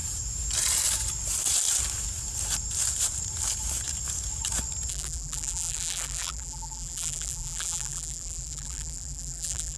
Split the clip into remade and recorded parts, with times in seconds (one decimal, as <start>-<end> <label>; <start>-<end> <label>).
0.0-4.9 recorded; 4.9-9.8 remade